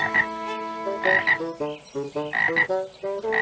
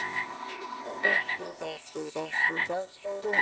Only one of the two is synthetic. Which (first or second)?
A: second